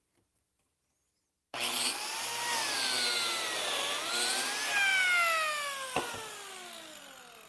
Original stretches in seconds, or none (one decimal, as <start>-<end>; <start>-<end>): 0.0-7.5